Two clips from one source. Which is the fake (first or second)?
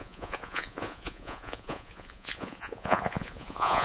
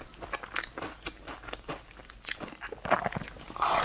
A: first